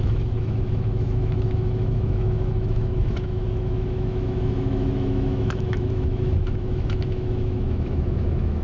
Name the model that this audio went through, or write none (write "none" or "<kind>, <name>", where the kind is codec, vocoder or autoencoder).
autoencoder, DAC-VAE